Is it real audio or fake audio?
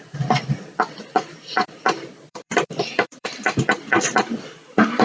fake